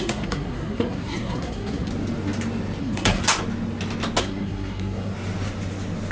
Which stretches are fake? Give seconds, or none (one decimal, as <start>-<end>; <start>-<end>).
0.0-1.9; 2.8-3.2; 4.2-5.1